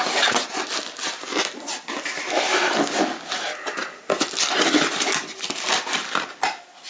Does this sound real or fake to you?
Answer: real